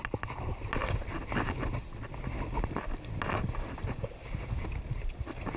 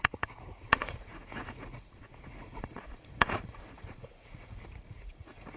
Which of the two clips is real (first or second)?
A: first